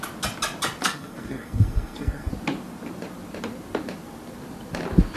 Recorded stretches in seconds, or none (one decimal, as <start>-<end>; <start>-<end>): 0.0-0.8; 2.3-5.2